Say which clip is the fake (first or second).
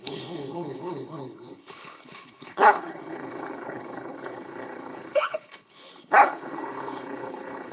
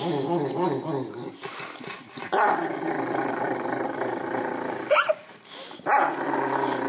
first